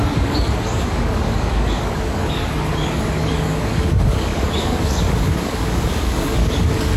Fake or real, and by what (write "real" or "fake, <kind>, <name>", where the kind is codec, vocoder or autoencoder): fake, codec, DAC